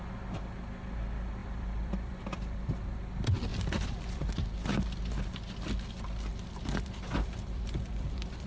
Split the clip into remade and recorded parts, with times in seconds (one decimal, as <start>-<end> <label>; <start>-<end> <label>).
0.0-1.4 recorded; 1.4-2.7 remade; 2.7-3.5 recorded; 3.5-4.3 remade; 4.3-6.3 recorded; 6.3-8.5 remade